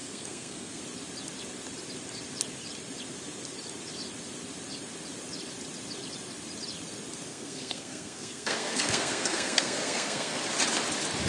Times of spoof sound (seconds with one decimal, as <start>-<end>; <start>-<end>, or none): 0.0-0.8; 7.3-10.4